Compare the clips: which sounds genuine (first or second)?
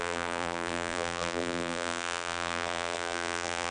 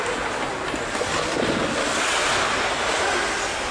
second